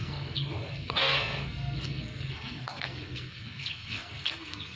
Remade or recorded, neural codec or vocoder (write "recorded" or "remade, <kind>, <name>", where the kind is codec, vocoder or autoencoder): remade, codec, SNAC